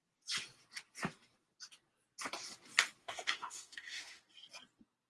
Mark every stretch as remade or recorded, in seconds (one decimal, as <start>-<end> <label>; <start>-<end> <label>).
0.0-3.0 recorded; 3.0-4.2 remade; 4.2-5.1 recorded